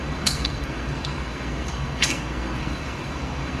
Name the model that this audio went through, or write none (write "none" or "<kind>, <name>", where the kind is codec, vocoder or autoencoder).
codec, SNAC